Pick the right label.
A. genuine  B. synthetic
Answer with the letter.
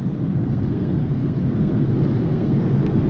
B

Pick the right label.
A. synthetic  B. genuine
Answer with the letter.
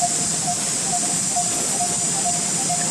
B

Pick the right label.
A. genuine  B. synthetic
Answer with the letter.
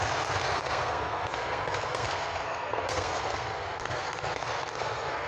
B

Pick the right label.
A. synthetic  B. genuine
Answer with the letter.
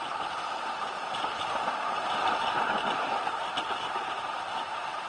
B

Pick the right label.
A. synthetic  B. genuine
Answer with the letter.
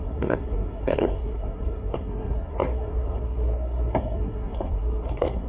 A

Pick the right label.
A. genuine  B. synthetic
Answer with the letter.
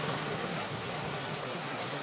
B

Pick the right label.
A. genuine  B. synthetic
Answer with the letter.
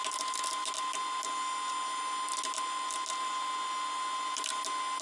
A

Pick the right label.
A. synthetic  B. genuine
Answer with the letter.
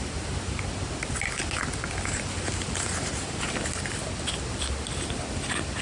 B